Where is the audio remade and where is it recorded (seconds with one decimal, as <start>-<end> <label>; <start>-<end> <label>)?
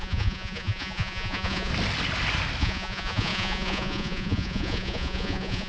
0.0-1.7 remade; 1.7-2.6 recorded; 2.6-5.7 remade